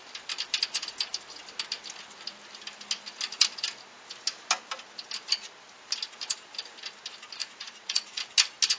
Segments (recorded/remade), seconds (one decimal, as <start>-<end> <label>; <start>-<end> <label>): 0.0-7.4 recorded; 7.4-8.2 remade; 8.2-8.8 recorded